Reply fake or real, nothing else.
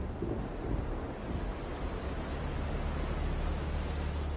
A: real